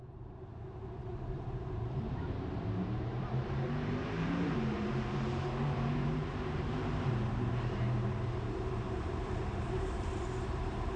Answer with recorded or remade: remade